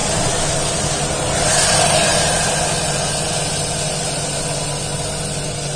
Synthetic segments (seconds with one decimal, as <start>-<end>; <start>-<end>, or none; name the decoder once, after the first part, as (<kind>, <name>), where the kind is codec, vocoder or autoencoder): none